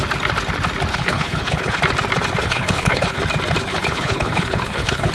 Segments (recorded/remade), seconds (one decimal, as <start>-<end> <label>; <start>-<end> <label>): 0.0-0.9 recorded; 0.9-1.8 remade; 1.8-2.4 recorded; 2.4-3.2 remade; 3.2-3.7 recorded; 3.7-5.1 remade